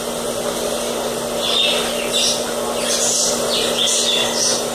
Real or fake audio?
real